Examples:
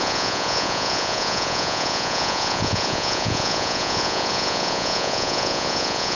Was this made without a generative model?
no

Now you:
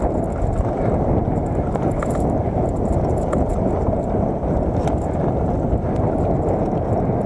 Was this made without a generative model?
yes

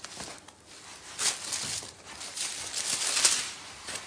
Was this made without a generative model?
yes